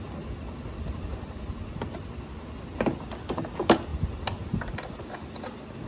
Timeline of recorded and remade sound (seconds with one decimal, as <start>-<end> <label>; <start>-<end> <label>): 0.0-5.9 recorded